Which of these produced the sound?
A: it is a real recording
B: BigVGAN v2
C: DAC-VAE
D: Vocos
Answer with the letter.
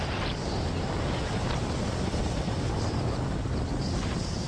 A